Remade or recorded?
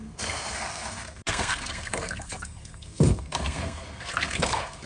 remade